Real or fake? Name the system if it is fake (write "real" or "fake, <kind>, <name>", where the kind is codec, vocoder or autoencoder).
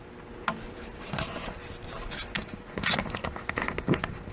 real